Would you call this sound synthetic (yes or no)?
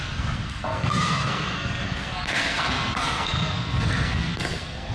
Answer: yes